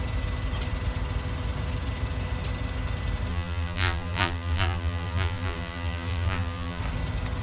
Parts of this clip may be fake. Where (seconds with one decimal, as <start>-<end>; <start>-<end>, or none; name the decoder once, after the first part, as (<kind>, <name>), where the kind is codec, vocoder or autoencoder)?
3.3-6.8 (vocoder, BigVGAN v2)